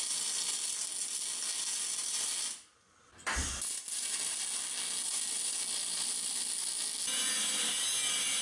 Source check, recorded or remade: recorded